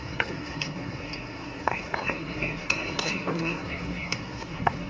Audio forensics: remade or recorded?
remade